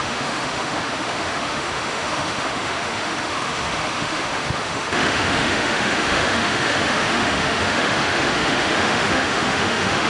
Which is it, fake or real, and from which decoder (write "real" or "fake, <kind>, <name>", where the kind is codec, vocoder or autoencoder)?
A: fake, autoencoder, DAC-VAE